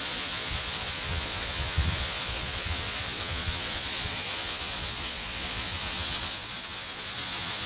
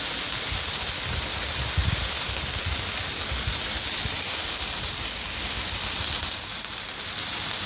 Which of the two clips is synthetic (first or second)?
first